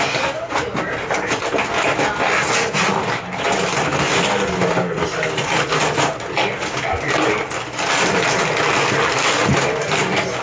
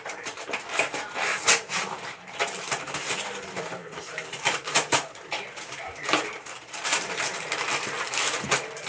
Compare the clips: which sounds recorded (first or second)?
first